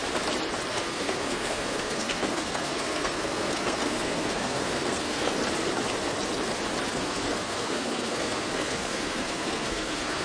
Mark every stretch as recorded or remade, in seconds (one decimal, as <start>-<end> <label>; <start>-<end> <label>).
0.0-0.7 recorded; 0.7-5.4 remade; 5.4-6.9 recorded; 6.9-10.2 remade